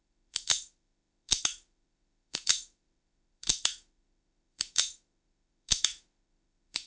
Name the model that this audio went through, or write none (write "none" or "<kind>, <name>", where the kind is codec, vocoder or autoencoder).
autoencoder, DAC-VAE